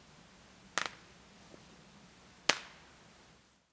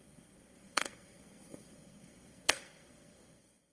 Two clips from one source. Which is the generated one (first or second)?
second